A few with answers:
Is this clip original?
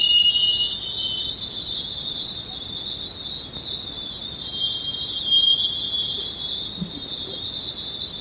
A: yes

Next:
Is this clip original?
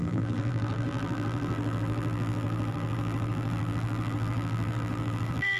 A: no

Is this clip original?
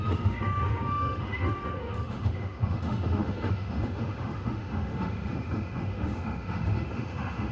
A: no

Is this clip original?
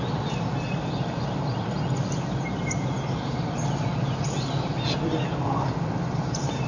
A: yes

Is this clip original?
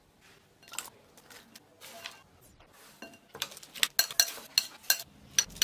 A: yes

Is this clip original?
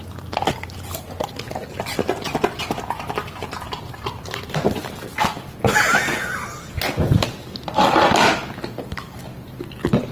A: yes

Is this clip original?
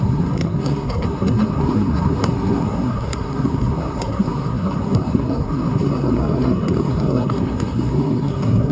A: no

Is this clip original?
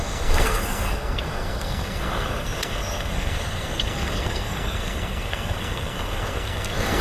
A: no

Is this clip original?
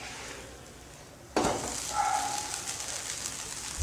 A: yes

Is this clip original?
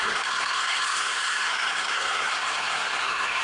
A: no